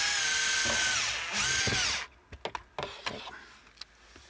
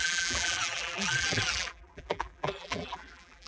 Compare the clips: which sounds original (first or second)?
first